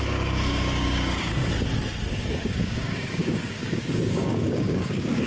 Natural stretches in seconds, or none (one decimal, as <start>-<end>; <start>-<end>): 1.4-2.1